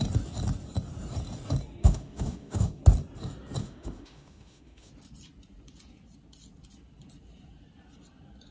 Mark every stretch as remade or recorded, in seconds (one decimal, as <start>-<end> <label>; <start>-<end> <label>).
0.0-1.8 recorded; 1.8-2.8 remade; 2.8-3.6 recorded; 3.6-4.9 remade; 4.9-8.5 recorded

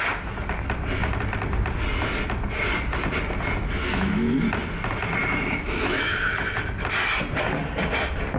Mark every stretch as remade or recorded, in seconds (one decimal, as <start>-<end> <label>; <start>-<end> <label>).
0.0-3.8 recorded; 3.8-4.4 remade; 4.4-5.2 recorded; 5.2-6.4 remade; 6.4-8.4 recorded

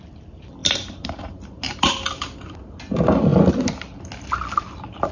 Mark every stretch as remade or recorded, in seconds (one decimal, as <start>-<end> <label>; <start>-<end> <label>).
0.0-5.1 recorded

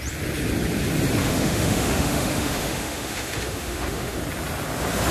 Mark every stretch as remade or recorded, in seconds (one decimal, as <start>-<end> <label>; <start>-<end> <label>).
0.0-1.2 recorded; 1.2-4.2 remade; 4.2-5.1 recorded

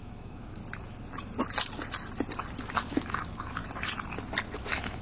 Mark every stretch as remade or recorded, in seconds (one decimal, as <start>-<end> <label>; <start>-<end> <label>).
0.0-0.6 remade; 0.6-2.6 recorded; 2.6-3.6 remade; 3.6-4.5 recorded; 4.5-5.0 remade